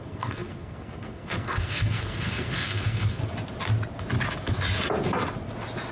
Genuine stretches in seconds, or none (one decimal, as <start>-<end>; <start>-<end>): 3.2-5.9